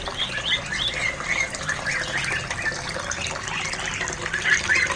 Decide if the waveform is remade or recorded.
recorded